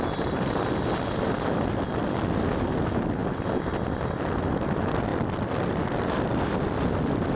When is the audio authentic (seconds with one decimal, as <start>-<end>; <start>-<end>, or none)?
none